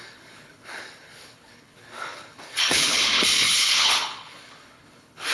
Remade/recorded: remade